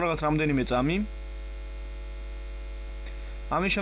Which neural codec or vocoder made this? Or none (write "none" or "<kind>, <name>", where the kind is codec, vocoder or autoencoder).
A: none